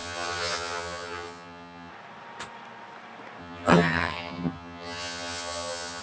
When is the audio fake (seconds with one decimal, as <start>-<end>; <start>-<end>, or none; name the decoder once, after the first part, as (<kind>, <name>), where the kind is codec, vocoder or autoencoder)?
0.0-1.9 (vocoder, HiFi-GAN); 3.4-6.0

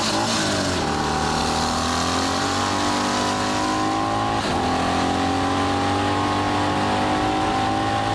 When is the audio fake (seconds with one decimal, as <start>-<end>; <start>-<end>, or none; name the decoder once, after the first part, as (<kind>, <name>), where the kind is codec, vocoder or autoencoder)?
none

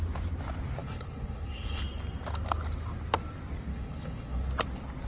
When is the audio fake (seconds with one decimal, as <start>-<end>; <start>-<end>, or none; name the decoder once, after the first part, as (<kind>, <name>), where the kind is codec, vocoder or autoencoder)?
0.8-1.8 (codec, HILCodec); 3.7-4.5

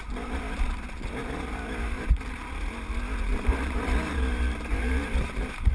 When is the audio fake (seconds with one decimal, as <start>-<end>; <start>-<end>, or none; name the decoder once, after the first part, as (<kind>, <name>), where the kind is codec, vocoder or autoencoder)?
1.2-2.2 (vocoder, BigVGAN v2); 3.3-5.7

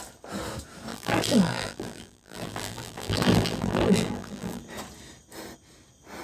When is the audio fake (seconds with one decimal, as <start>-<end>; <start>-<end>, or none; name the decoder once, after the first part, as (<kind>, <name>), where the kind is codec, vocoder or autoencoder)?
0.9-4.6 (vocoder, BigVGAN v2)

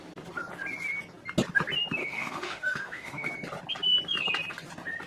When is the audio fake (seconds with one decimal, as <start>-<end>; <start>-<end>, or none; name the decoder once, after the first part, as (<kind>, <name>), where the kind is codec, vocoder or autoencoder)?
2.0-3.3 (autoencoder, DAC-VAE)